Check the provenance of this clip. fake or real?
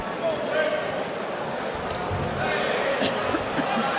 real